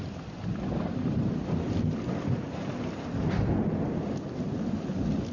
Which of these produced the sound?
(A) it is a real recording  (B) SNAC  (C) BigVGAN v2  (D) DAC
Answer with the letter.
A